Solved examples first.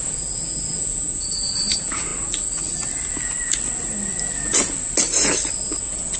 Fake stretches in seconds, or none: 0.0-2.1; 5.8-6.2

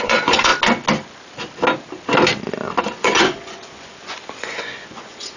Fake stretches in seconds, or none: 0.0-0.5; 2.8-5.4